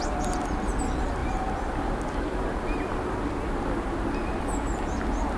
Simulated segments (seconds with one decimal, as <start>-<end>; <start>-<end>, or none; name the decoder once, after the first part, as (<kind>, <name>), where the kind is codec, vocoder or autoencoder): none

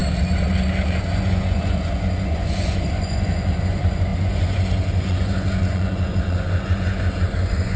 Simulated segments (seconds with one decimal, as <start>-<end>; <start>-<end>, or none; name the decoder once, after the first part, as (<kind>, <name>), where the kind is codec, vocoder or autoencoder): 0.9-7.8 (vocoder, Vocos)